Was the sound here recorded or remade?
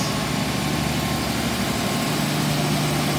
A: recorded